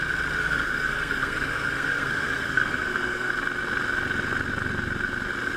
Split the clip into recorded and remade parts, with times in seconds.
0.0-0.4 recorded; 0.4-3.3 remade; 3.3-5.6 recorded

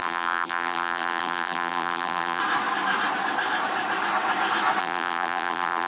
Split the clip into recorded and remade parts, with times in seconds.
0.0-2.4 remade; 2.4-4.8 recorded; 4.8-5.9 remade